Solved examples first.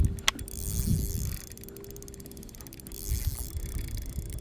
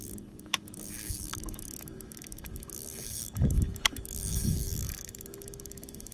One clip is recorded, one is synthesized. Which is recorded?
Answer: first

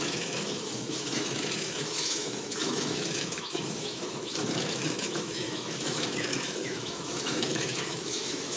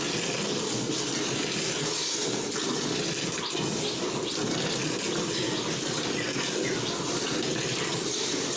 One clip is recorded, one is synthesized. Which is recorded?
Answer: second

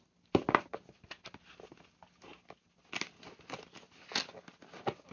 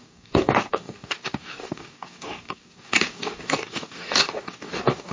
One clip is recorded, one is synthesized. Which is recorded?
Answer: first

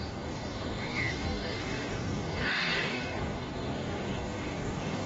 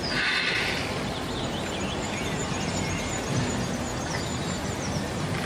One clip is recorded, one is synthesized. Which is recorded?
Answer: second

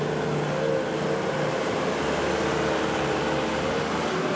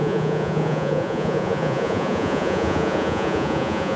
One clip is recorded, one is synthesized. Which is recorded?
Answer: first